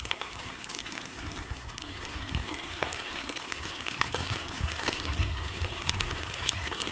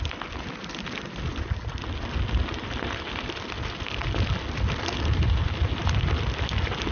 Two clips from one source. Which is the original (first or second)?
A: second